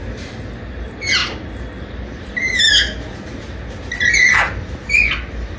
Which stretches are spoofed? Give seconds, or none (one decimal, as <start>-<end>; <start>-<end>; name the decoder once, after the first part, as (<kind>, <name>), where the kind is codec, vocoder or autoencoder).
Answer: none